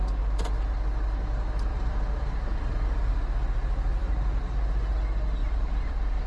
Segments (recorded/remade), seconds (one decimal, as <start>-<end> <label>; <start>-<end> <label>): 0.0-1.7 recorded; 1.7-3.1 remade; 3.1-3.9 recorded; 3.9-4.5 remade; 4.5-5.4 recorded; 5.4-6.3 remade